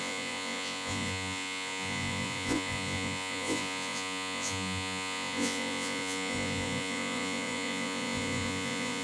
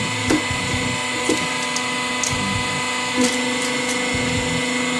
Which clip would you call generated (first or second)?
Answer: first